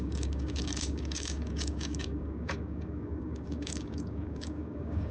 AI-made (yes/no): yes